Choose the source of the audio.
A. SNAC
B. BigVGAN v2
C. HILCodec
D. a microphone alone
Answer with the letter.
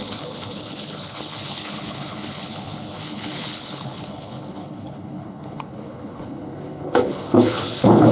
C